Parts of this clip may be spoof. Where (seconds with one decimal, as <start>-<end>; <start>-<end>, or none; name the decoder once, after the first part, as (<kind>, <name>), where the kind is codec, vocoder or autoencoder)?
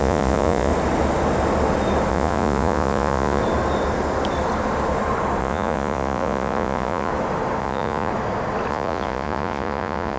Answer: 0.0-0.7 (vocoder, Vocos); 2.1-3.4; 5.4-7.1; 7.6-8.1; 8.7-10.2